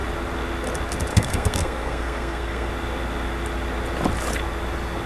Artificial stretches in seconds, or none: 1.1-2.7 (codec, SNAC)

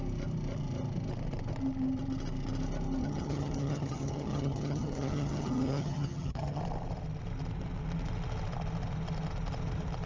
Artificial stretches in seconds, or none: 3.0-6.6 (vocoder, HiFi-GAN)

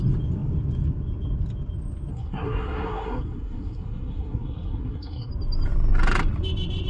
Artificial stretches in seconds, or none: 2.1-5.3 (codec, SNAC)

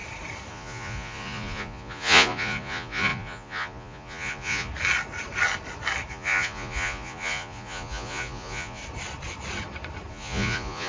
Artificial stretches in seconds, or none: 0.5-4.7 (vocoder, Vocos); 6.1-8.8; 10.1-10.9

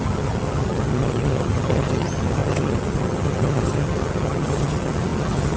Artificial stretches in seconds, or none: 0.0-5.6 (vocoder, HiFi-GAN)

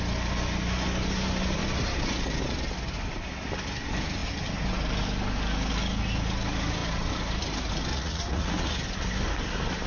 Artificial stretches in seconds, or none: 7.9-8.7 (vocoder, Vocos)

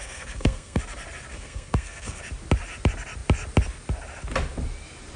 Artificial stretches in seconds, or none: 0.0-0.8 (codec, SNAC); 1.3-2.2